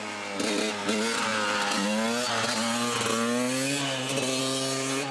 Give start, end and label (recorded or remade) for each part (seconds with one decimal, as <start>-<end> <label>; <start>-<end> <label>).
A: 0.0-5.1 recorded